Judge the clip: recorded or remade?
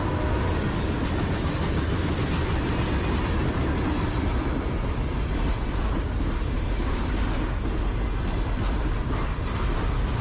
recorded